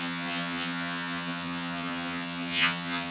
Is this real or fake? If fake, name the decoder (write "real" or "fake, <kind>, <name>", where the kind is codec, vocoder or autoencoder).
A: fake, vocoder, HiFi-GAN